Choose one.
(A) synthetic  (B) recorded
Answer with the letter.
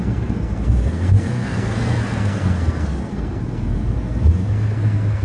A